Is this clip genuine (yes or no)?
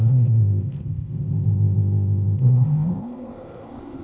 no